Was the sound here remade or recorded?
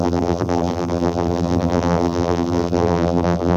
remade